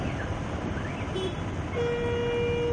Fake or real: real